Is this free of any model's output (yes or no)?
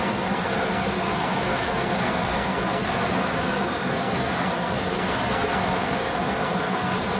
no